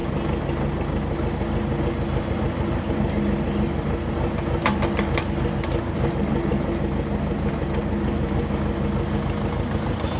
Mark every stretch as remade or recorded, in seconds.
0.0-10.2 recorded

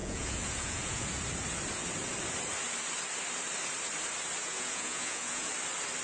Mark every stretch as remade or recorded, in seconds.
0.0-1.2 remade; 1.2-4.4 recorded; 4.4-5.5 remade; 5.5-6.0 recorded

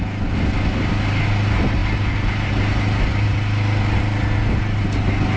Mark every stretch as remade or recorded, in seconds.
0.0-5.4 recorded

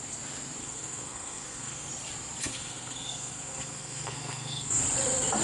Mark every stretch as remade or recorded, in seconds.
0.0-0.6 recorded; 0.6-1.9 remade; 1.9-2.5 recorded; 2.5-4.8 remade; 4.8-5.4 recorded

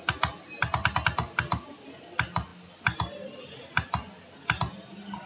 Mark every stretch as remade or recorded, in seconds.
0.0-5.3 recorded